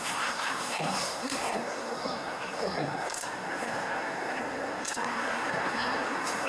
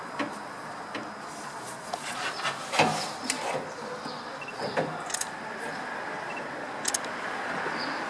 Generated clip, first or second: first